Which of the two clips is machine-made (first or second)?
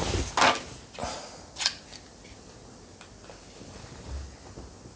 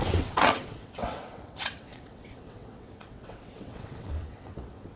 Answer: second